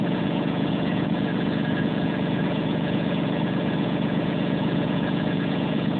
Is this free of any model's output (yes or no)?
no